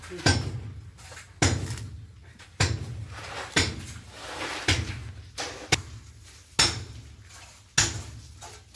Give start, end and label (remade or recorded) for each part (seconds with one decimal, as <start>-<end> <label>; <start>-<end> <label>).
0.0-8.8 recorded